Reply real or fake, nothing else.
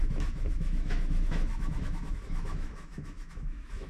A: fake